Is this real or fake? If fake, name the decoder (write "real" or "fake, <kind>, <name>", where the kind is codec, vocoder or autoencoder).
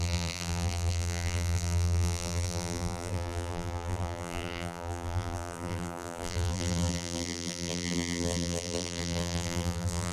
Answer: fake, vocoder, BigVGAN v2